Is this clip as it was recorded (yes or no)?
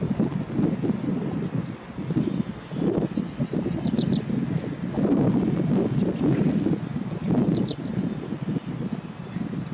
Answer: yes